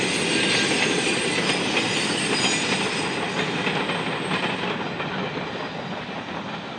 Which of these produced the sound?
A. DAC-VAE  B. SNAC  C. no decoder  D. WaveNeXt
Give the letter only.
C